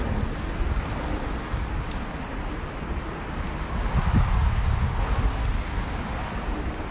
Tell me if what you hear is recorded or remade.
recorded